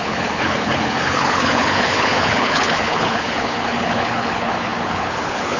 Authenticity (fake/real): fake